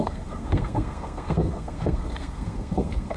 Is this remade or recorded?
remade